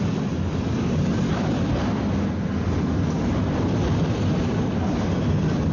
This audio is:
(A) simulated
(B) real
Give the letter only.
B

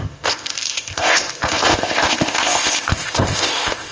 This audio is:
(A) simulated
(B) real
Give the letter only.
A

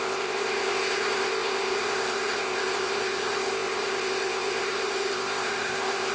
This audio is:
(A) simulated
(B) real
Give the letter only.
A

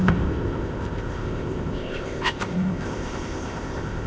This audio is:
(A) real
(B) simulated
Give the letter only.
B